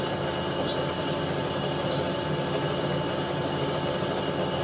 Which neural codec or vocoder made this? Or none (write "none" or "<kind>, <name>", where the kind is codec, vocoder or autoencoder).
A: none